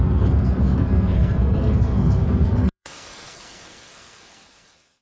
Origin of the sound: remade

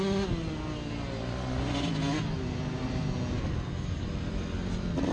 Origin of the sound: recorded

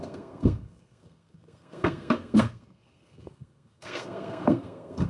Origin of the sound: remade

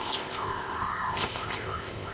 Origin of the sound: remade